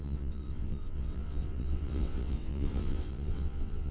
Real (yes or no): no